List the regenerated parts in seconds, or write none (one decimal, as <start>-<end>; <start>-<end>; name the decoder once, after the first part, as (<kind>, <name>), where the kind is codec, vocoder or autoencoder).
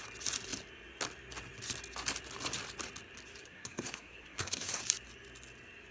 3.4-4.8 (codec, SNAC)